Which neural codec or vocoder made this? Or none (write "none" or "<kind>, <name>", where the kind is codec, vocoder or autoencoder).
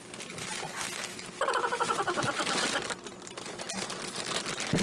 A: none